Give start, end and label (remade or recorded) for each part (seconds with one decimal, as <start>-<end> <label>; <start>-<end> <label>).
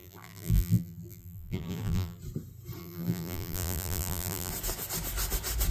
0.0-2.2 remade; 2.2-2.8 recorded; 2.8-4.5 remade; 4.5-5.7 recorded